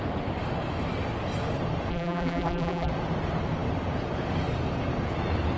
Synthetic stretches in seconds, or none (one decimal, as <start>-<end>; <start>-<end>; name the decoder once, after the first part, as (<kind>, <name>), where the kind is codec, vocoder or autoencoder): 1.9-2.9 (vocoder, BigVGAN v2)